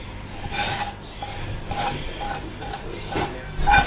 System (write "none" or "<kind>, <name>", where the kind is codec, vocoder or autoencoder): none